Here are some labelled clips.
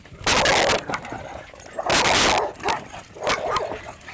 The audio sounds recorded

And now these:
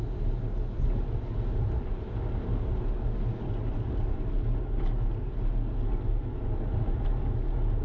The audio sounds recorded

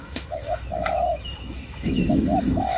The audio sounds remade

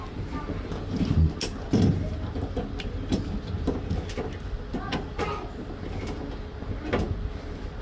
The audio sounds recorded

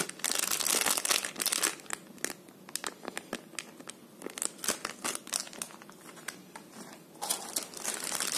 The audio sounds recorded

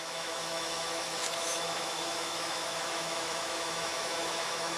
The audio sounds remade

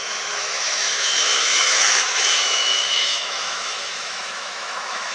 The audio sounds remade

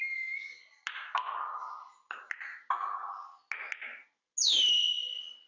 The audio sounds recorded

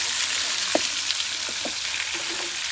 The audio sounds recorded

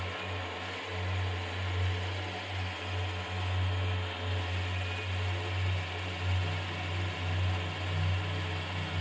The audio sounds recorded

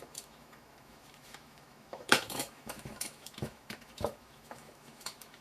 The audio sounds remade